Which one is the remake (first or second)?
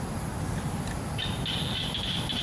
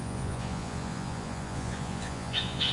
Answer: second